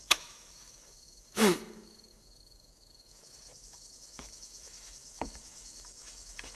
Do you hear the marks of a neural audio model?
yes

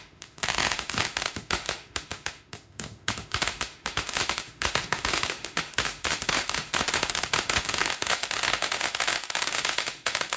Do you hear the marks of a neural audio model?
yes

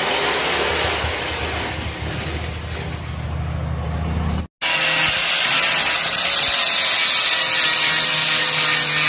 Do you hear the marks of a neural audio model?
no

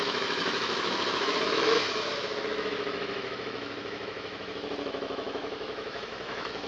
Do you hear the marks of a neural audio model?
yes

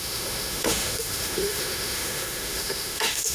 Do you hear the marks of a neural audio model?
yes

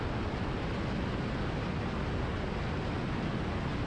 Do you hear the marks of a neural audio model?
no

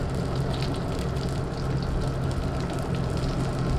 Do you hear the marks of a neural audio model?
no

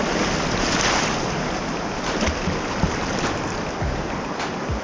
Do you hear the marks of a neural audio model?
no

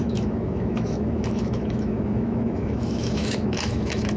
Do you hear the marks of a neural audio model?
yes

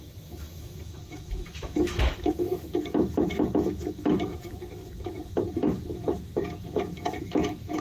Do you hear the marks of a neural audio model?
yes